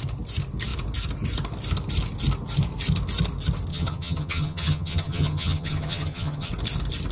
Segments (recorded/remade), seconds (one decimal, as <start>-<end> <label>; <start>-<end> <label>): 0.0-3.7 recorded; 3.7-6.5 remade; 6.5-7.1 recorded